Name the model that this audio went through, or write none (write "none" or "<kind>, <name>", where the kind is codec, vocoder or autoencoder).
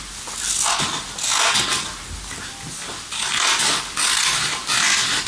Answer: none